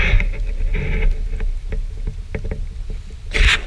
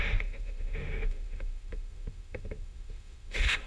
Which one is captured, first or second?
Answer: first